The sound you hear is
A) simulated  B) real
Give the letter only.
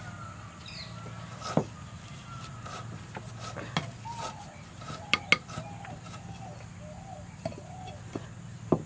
B